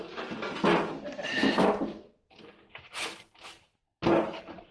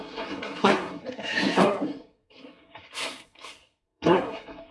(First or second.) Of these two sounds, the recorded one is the first